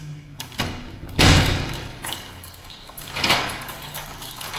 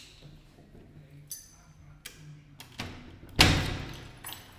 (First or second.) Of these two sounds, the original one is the second